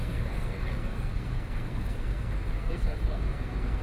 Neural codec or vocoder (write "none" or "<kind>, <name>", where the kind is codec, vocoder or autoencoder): codec, SNAC